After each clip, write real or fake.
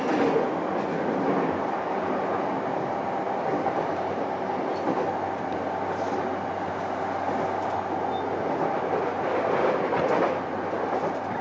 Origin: real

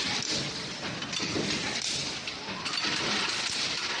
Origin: fake